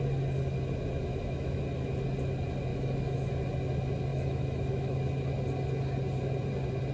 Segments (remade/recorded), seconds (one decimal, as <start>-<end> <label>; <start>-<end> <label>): 0.0-1.1 recorded; 1.1-1.6 remade; 1.6-2.7 recorded; 2.7-3.3 remade; 3.3-4.1 recorded; 4.1-5.0 remade; 5.0-6.9 recorded